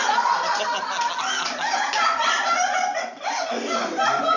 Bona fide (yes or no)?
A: yes